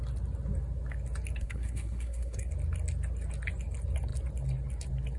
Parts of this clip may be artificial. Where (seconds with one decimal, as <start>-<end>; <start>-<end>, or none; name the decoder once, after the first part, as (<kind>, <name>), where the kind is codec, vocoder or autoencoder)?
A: 1.4-2.5 (codec, SNAC)